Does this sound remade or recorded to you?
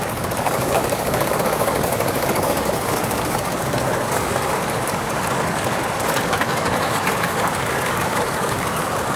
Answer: remade